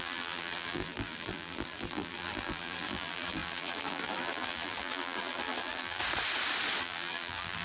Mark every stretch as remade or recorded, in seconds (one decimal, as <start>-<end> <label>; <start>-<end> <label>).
0.0-6.0 remade; 6.0-6.8 recorded; 6.8-7.6 remade